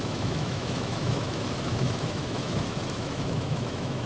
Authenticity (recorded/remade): remade